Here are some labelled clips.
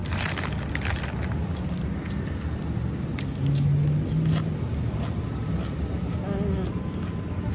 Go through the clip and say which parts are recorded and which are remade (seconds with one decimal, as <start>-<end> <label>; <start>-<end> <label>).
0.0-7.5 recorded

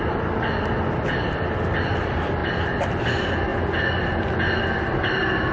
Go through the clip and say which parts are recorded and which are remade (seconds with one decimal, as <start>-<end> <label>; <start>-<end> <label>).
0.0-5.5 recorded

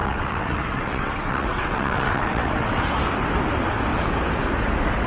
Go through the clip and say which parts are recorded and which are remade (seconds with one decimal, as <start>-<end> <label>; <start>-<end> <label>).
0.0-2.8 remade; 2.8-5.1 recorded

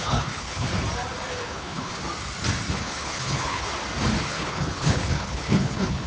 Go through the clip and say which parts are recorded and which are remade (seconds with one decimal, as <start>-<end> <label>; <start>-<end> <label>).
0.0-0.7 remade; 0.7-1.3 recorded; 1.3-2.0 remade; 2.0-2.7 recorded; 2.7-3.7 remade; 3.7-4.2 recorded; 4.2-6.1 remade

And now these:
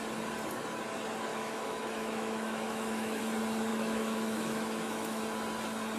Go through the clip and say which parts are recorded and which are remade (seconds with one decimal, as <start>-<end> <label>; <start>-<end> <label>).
0.0-1.3 recorded; 1.3-3.2 remade; 3.2-3.7 recorded; 3.7-5.2 remade; 5.2-6.0 recorded